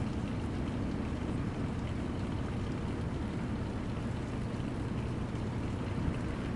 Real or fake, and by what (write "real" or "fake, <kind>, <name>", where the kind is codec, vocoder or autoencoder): real